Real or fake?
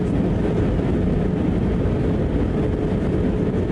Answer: real